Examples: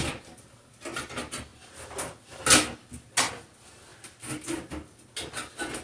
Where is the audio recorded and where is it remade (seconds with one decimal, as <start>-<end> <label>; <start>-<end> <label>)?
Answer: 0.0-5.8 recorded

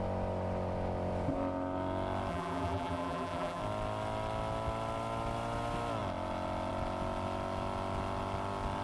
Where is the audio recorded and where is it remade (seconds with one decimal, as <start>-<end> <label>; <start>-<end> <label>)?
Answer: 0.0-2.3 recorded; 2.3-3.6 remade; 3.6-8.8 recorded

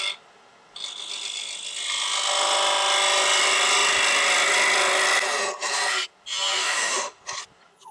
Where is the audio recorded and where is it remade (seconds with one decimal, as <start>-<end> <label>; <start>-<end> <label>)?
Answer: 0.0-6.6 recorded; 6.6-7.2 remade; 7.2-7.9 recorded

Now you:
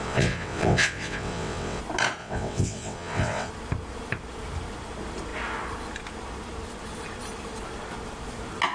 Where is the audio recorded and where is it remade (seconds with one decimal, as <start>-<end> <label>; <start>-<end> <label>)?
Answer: 0.0-1.8 remade; 1.8-2.2 recorded; 2.2-3.5 remade; 3.5-8.7 recorded

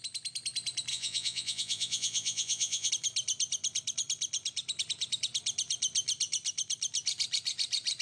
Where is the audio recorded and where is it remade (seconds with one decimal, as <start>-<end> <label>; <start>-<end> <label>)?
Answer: 0.0-0.9 recorded; 0.9-2.9 remade; 2.9-8.0 recorded